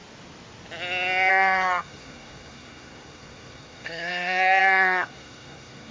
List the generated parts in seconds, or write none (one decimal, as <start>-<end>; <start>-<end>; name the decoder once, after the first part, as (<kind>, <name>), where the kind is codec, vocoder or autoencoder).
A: 1.3-5.9 (codec, SNAC)